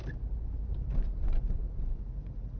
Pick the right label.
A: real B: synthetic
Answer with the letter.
A